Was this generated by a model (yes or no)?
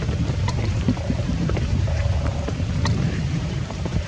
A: yes